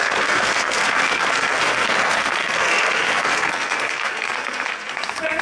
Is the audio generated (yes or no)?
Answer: yes